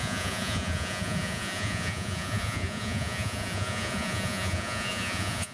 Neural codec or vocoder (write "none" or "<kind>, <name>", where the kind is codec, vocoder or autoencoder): vocoder, Vocos